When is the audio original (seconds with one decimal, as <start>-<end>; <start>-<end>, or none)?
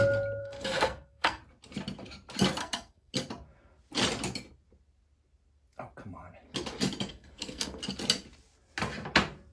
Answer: 0.0-0.4; 1.4-2.6; 3.1-7.1; 7.8-9.5